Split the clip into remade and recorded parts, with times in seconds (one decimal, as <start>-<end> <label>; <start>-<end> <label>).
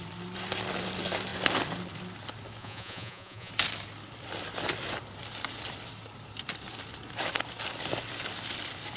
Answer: 0.0-2.6 recorded; 2.6-3.5 remade; 3.5-9.0 recorded